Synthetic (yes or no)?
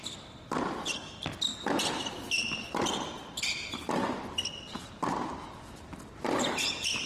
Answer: no